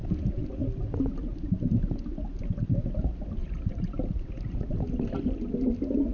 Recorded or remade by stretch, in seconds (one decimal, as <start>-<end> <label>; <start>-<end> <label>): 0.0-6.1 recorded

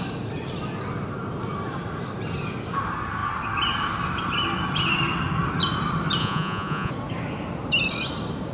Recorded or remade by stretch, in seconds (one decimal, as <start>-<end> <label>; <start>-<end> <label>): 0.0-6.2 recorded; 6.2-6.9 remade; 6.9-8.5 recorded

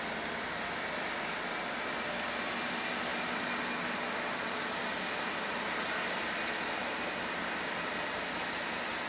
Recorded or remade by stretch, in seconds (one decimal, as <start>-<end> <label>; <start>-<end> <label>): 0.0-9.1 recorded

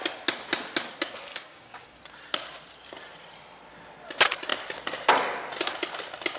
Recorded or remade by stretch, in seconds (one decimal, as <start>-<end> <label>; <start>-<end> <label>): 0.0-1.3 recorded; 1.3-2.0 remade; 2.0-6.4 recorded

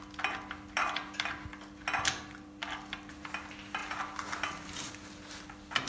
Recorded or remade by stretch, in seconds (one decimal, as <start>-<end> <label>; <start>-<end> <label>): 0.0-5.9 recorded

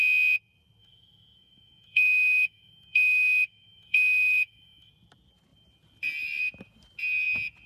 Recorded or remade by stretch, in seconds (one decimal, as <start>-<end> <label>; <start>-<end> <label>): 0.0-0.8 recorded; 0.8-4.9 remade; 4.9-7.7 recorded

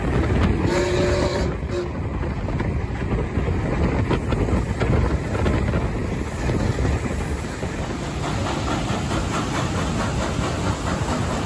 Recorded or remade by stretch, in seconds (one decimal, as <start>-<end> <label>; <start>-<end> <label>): 0.0-11.5 recorded